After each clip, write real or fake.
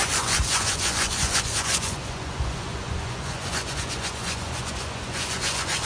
fake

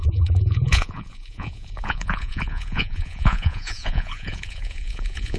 fake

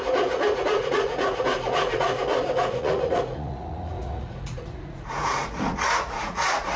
fake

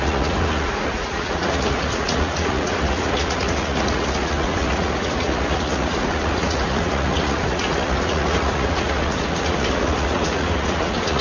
fake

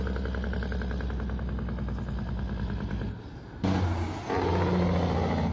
real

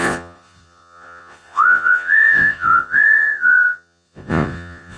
fake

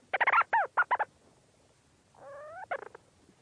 real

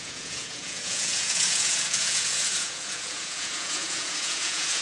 fake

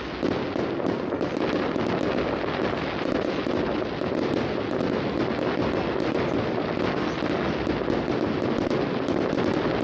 real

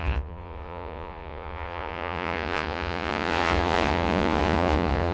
fake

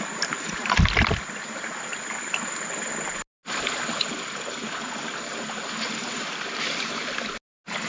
real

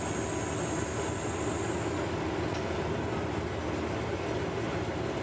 real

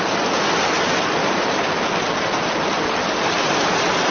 real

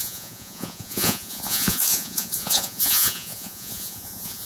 fake